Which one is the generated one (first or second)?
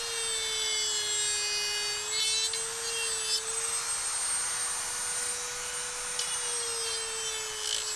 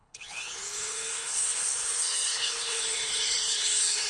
second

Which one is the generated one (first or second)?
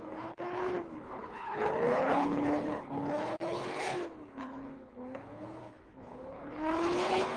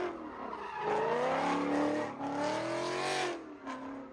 first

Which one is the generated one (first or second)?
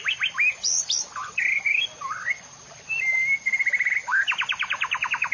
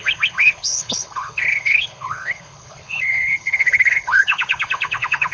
second